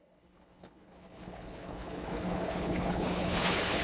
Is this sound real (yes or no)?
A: no